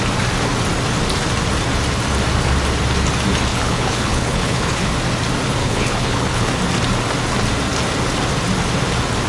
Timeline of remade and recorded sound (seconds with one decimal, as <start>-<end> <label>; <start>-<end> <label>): 0.0-3.5 recorded; 3.5-4.9 remade; 4.9-5.6 recorded; 5.6-6.5 remade; 6.5-9.3 recorded